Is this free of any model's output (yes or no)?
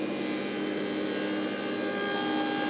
yes